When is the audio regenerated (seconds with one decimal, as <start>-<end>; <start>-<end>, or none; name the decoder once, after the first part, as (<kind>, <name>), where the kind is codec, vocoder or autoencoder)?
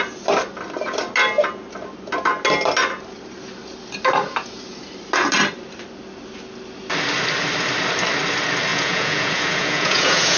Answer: 8.7-10.4 (vocoder, Vocos)